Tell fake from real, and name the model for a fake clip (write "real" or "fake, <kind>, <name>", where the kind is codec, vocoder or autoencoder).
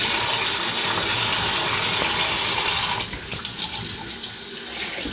real